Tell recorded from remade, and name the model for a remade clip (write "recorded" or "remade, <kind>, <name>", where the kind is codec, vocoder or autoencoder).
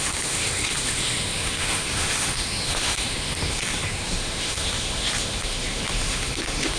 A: remade, autoencoder, DAC-VAE